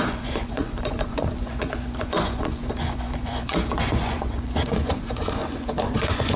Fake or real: fake